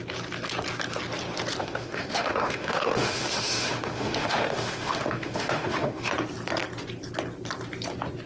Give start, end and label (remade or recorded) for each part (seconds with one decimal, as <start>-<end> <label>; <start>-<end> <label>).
0.0-1.6 recorded; 1.6-6.1 remade; 6.1-8.3 recorded